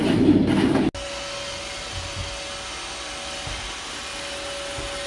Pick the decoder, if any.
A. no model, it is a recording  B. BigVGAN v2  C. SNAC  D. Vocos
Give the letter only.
A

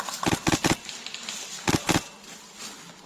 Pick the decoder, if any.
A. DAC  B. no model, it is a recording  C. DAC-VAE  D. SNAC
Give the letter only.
B